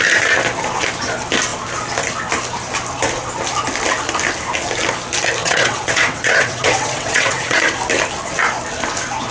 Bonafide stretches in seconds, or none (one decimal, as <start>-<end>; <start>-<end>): 0.0-5.4; 7.6-9.3